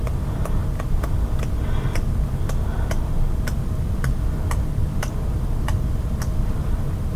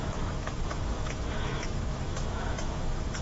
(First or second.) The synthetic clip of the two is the second